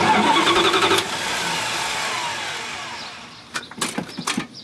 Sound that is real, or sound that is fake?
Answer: real